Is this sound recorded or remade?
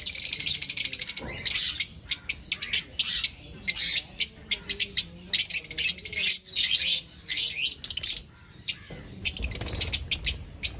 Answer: recorded